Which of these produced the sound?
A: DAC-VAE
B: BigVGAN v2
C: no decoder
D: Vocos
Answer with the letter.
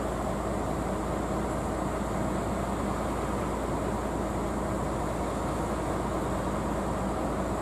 C